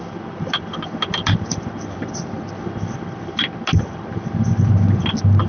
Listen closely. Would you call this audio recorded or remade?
recorded